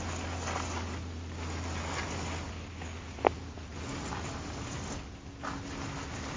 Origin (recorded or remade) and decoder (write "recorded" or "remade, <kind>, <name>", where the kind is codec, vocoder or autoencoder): recorded